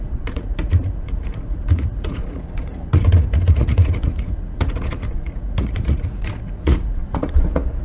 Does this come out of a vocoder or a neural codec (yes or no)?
yes